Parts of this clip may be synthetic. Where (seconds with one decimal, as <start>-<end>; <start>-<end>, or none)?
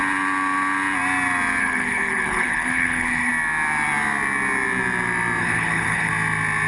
1.6-3.3; 5.4-6.1